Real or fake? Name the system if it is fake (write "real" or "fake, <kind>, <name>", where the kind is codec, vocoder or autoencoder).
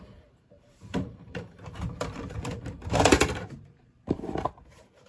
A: fake, vocoder, BigVGAN v2